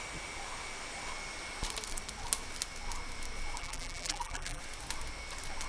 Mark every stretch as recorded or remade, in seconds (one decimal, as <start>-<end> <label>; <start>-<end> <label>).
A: 0.0-3.6 recorded; 3.6-4.6 remade; 4.6-5.7 recorded

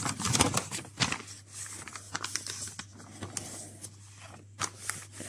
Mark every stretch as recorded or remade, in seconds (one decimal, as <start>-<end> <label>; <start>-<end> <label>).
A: 0.0-1.0 recorded; 1.0-1.9 remade; 1.9-5.3 recorded

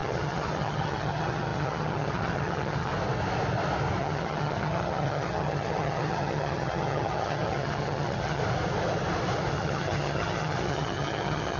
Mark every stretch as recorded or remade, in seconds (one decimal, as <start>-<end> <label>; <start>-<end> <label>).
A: 0.0-2.9 remade; 2.9-4.0 recorded; 4.0-8.4 remade; 8.4-9.5 recorded; 9.5-11.6 remade

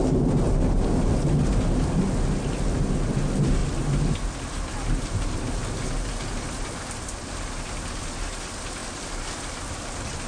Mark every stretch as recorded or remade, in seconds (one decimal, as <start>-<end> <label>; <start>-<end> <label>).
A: 0.0-10.3 recorded

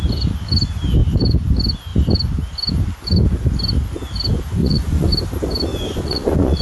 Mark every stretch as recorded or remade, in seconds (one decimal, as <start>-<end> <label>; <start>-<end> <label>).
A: 0.0-4.6 recorded; 4.6-5.1 remade; 5.1-5.7 recorded; 5.7-6.6 remade